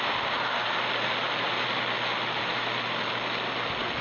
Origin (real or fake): real